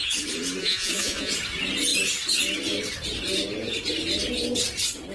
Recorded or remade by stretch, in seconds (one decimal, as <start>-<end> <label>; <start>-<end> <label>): 0.0-0.6 recorded; 0.6-1.3 remade; 1.3-5.1 recorded